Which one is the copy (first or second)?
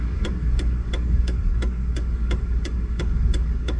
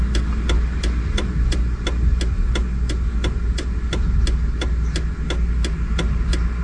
first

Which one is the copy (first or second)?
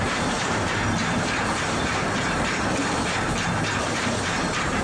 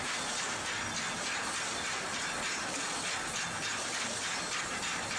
first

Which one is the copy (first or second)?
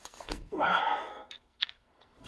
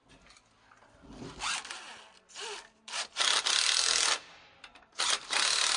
first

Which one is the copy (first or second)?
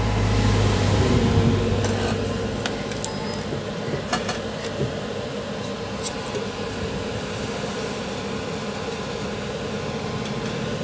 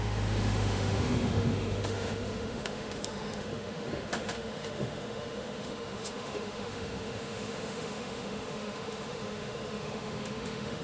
second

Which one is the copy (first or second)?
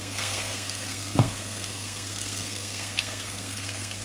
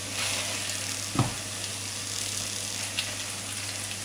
first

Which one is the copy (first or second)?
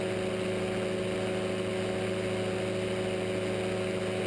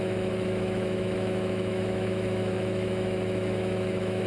second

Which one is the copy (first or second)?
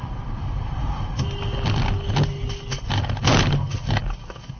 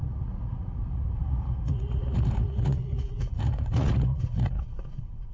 second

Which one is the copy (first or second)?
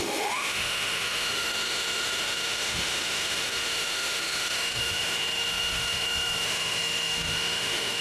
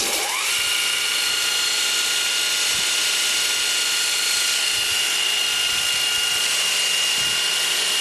first